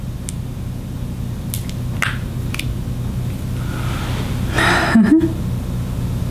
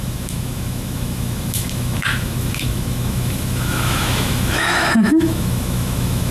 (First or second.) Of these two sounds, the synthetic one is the second